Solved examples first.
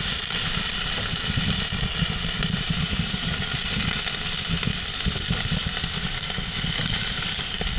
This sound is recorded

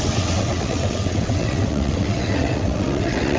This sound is remade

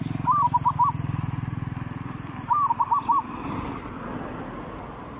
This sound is recorded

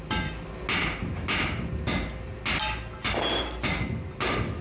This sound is recorded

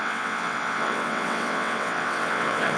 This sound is remade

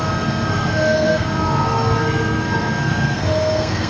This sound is remade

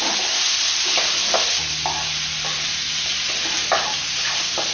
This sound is recorded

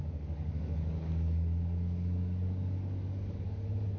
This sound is remade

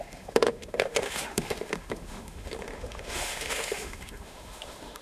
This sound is remade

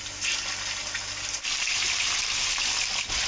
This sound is recorded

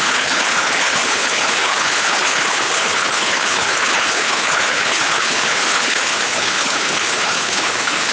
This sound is remade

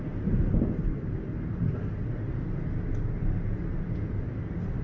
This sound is recorded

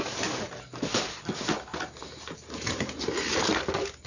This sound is recorded